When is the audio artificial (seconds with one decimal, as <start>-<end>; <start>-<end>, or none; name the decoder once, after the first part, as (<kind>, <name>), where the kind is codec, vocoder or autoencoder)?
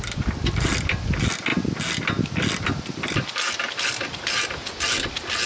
none